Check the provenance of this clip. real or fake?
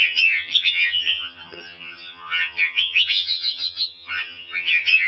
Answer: fake